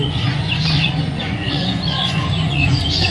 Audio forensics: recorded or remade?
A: remade